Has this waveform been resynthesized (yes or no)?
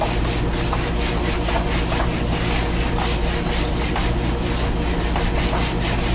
no